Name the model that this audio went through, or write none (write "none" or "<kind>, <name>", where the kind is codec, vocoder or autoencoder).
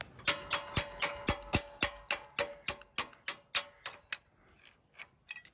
none